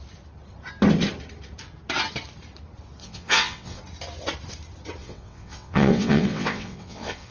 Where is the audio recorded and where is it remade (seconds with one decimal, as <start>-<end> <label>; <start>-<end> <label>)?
0.0-3.0 recorded; 3.0-3.8 remade; 3.8-5.0 recorded; 5.0-7.3 remade